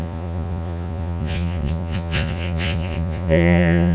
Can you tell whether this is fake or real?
fake